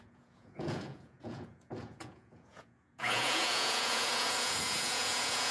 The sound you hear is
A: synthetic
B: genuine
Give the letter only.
A